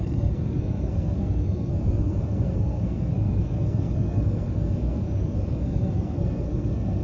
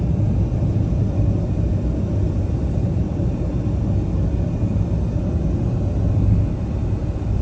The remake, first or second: first